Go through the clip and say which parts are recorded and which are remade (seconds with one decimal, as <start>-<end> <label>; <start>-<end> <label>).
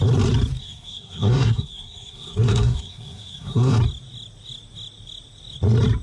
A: 0.0-0.6 recorded; 0.6-3.8 remade; 3.8-6.0 recorded